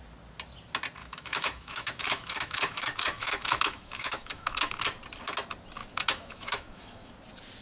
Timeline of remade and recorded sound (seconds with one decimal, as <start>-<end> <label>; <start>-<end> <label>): 0.0-1.0 recorded; 1.0-4.8 remade; 4.8-5.8 recorded; 5.8-7.1 remade; 7.1-7.6 recorded